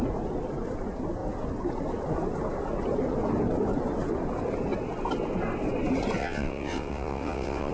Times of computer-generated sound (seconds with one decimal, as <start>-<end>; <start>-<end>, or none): 6.2-7.7